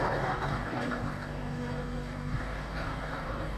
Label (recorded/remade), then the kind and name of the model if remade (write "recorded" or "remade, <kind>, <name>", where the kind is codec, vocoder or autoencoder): remade, codec, DAC